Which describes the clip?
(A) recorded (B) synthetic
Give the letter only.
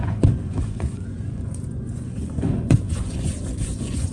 B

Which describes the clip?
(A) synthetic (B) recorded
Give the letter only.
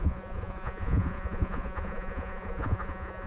A